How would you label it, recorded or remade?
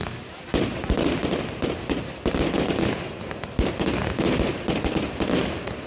recorded